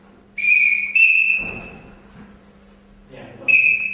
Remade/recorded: recorded